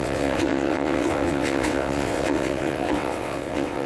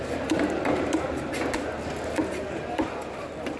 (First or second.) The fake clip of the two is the first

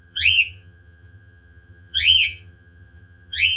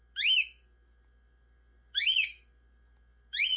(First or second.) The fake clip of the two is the first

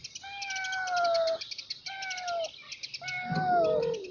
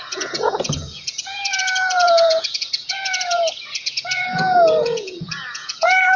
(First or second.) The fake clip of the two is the second